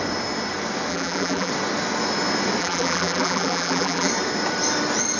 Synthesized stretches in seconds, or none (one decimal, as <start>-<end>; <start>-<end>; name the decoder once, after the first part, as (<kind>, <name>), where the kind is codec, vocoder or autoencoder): 0.9-1.5 (vocoder, BigVGAN v2); 2.6-4.1